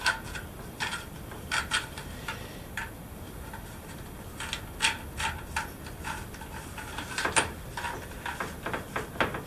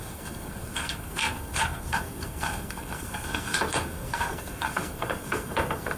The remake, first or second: second